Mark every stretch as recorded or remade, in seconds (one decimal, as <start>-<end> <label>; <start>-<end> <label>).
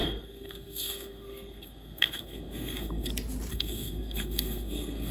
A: 0.0-3.1 remade; 3.1-3.5 recorded; 3.5-5.1 remade